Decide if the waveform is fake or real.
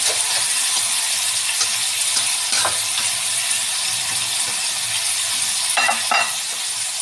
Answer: fake